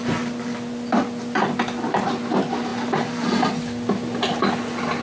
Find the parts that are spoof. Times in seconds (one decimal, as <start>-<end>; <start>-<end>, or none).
none